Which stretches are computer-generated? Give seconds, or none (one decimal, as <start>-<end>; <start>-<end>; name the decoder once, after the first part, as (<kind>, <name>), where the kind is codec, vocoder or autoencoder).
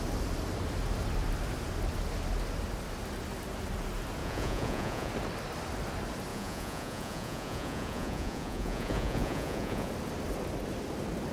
4.2-5.1 (vocoder, Vocos); 6.3-9.9